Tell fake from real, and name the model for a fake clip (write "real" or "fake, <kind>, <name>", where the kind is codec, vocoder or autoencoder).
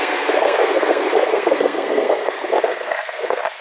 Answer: fake, codec, SNAC